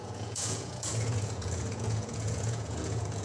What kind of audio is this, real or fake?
fake